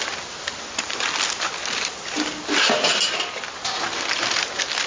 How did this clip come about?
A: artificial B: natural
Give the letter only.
B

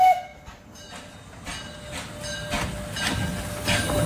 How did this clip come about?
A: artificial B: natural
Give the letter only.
B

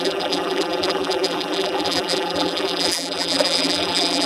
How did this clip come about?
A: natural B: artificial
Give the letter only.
B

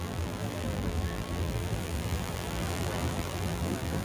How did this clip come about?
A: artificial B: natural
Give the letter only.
A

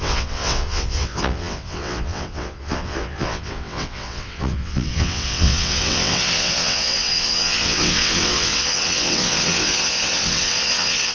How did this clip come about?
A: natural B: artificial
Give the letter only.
B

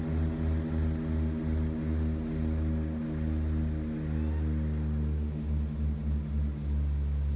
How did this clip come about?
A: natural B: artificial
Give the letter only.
A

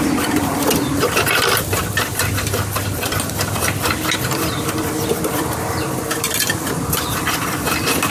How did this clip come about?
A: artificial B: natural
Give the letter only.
A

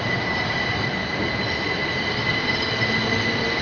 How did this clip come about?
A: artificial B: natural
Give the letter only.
B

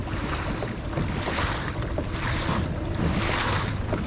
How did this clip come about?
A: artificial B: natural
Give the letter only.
B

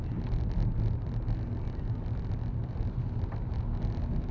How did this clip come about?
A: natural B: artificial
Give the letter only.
A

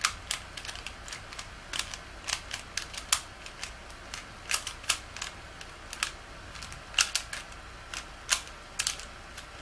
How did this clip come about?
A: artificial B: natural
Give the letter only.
B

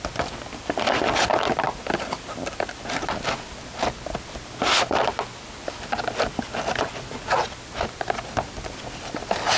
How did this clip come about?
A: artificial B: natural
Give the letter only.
B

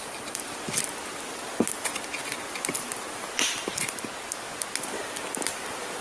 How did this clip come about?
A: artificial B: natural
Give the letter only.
B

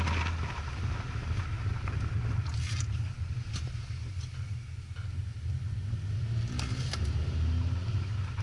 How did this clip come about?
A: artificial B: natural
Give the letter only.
B